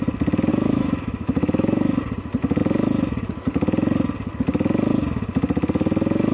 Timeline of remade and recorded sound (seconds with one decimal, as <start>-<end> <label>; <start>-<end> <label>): 0.0-0.5 recorded; 0.5-2.0 remade; 2.0-6.3 recorded

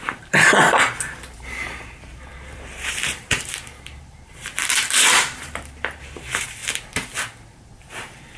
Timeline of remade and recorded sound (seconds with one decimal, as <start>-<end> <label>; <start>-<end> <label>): 0.0-6.6 remade; 6.6-7.8 recorded; 7.8-8.4 remade

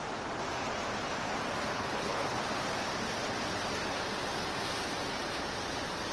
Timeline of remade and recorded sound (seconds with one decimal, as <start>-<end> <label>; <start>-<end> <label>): 0.0-1.7 recorded; 1.7-2.5 remade; 2.5-6.1 recorded

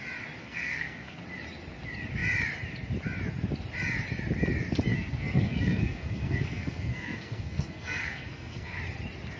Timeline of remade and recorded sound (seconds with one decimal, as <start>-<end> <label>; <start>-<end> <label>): 0.0-0.4 recorded; 0.4-1.2 remade; 1.2-4.9 recorded; 4.9-8.8 remade; 8.8-9.4 recorded

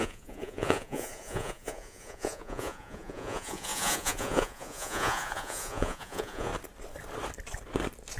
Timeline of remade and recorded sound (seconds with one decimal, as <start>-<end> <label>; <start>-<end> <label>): 0.0-6.5 remade; 6.5-8.2 recorded

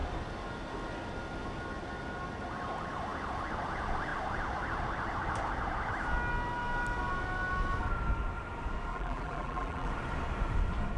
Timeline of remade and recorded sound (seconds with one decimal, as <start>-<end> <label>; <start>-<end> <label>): 0.0-8.9 recorded; 8.9-9.9 remade; 9.9-11.0 recorded